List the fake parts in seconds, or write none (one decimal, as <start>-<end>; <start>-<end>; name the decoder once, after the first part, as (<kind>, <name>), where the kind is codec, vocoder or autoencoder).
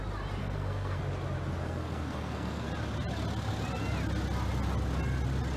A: 0.4-1.0 (codec, SNAC); 1.6-2.7